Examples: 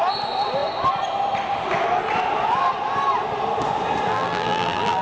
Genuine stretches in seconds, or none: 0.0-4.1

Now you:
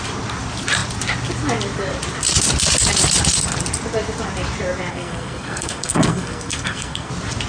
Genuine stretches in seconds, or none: 0.0-4.9; 7.1-7.5

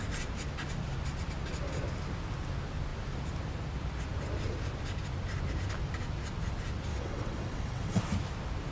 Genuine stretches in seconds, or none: 0.0-6.9; 8.0-8.7

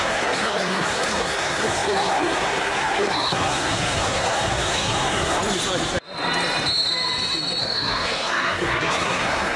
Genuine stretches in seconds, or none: 5.4-7.6

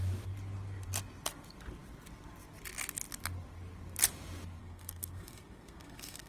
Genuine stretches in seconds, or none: 0.0-4.6

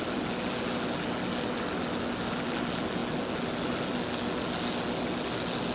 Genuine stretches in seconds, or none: 0.0-5.7